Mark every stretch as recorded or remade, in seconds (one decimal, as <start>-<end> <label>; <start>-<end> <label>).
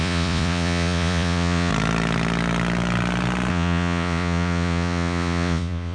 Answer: 0.0-1.7 remade; 1.7-3.5 recorded; 3.5-5.9 remade